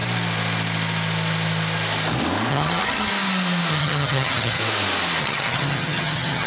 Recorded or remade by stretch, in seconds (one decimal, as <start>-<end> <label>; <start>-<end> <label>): 0.0-2.5 recorded; 2.5-3.1 remade; 3.1-3.7 recorded; 3.7-4.6 remade; 4.6-5.2 recorded; 5.2-6.5 remade